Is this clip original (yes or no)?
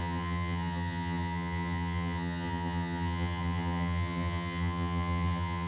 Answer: no